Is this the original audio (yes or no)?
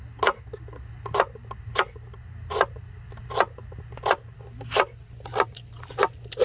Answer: yes